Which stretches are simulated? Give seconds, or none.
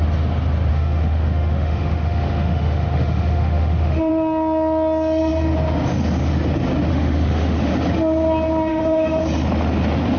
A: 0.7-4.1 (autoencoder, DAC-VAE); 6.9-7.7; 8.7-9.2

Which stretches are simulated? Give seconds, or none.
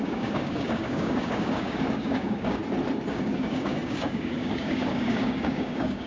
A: 0.0-2.6 (codec, DAC); 3.1-6.1